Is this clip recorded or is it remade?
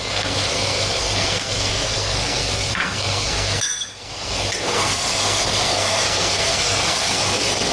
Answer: remade